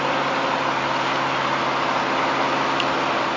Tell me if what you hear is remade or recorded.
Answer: recorded